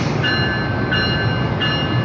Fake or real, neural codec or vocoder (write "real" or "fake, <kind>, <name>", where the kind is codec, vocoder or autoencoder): real